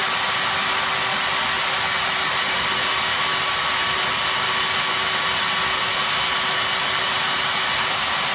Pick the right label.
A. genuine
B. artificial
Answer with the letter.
A